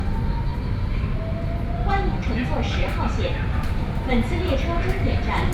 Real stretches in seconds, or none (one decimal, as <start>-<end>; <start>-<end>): 0.0-0.5; 1.0-2.2; 4.1-5.5